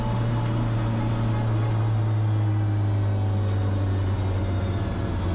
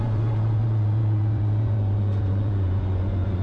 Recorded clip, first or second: first